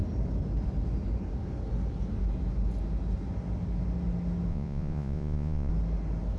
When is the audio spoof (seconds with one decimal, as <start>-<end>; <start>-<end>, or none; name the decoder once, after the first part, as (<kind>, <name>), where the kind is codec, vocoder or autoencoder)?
4.5-5.7 (vocoder, Vocos)